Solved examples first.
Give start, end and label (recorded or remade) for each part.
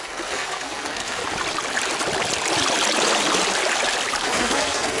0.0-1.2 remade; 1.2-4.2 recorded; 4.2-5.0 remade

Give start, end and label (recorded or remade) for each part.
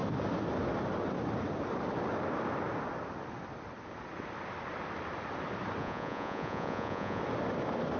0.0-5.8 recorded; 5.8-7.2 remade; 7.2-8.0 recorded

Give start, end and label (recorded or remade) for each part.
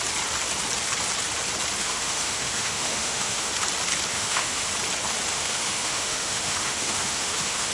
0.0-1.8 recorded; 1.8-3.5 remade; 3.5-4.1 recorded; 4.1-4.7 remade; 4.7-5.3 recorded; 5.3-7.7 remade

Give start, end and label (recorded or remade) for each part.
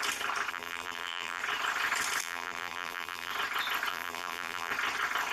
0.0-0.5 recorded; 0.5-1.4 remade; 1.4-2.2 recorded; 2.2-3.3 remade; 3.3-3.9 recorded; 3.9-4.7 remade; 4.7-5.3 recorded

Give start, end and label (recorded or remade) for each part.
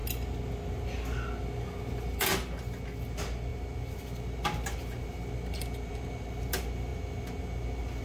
0.0-8.0 recorded